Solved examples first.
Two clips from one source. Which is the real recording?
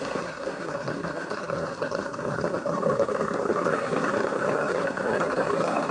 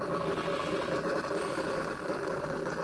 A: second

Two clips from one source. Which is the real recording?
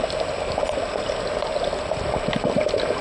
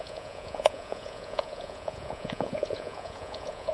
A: first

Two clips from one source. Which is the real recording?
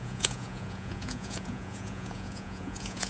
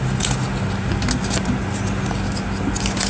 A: second